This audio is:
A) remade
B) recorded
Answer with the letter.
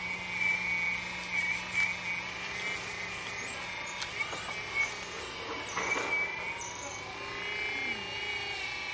B